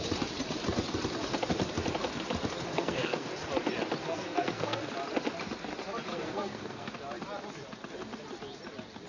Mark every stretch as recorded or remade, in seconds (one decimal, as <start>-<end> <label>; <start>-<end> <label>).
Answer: 0.0-2.7 recorded; 2.7-3.3 remade; 3.3-4.0 recorded; 4.0-4.9 remade; 4.9-6.1 recorded; 6.1-6.9 remade; 6.9-9.1 recorded